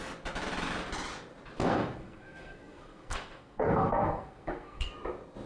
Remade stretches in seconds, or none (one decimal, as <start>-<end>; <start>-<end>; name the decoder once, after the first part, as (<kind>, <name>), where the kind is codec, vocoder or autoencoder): 1.6-4.9 (codec, SNAC)